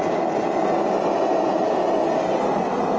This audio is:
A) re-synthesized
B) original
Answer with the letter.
B